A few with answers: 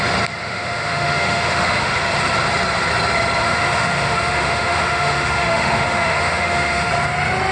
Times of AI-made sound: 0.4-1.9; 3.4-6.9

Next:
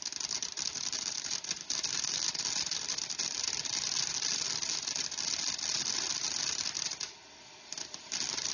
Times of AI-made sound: 1.6-2.4